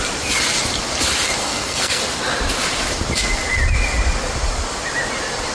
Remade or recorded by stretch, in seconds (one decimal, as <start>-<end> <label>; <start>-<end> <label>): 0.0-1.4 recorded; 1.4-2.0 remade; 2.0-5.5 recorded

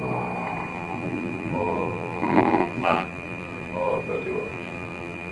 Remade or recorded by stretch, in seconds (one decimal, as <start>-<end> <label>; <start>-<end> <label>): 0.0-0.7 recorded; 0.7-3.9 remade; 3.9-4.5 recorded; 4.5-5.3 remade

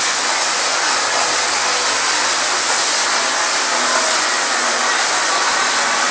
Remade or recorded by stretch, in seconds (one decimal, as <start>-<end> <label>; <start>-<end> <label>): 0.0-1.1 remade; 1.1-2.6 recorded; 2.6-3.4 remade; 3.4-4.0 recorded; 4.0-6.1 remade